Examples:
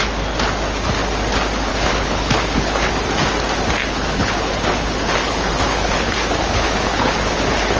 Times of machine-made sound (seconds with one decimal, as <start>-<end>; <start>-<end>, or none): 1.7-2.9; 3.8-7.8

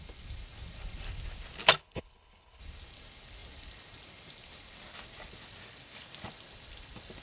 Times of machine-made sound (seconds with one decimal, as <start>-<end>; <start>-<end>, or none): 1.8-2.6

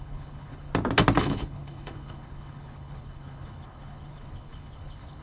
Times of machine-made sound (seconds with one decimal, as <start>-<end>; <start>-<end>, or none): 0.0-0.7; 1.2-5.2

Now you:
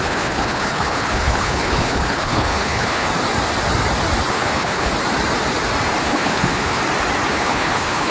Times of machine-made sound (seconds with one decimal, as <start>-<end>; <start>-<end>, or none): 0.0-3.1; 4.3-4.9; 6.0-6.8; 7.3-8.1

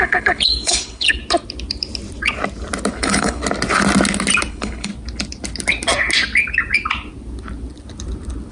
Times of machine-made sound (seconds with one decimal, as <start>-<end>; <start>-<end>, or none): 0.0-1.2; 2.9-3.4; 4.5-4.9